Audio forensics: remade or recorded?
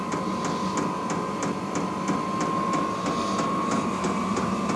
recorded